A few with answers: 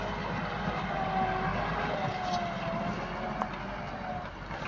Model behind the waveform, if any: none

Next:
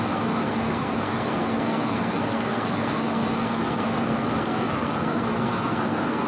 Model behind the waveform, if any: codec, SNAC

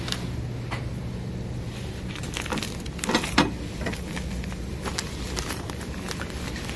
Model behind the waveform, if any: none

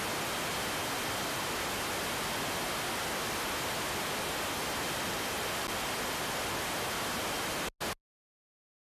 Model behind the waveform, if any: none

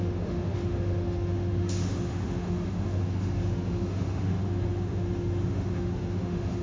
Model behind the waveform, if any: autoencoder, DAC-VAE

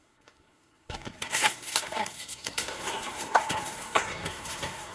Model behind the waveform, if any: codec, SNAC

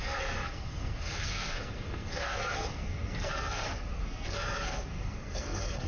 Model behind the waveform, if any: codec, SNAC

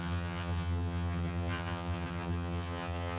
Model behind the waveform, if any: vocoder, HiFi-GAN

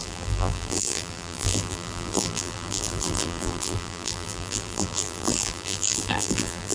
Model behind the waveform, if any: vocoder, BigVGAN v2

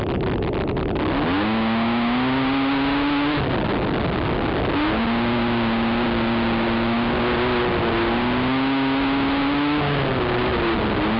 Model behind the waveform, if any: none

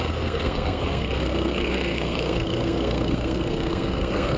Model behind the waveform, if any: codec, SNAC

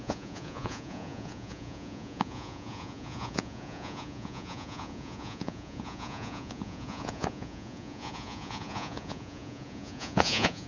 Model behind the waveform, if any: vocoder, Vocos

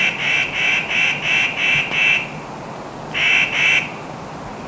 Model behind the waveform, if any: none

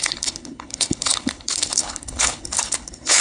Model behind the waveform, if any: codec, HILCodec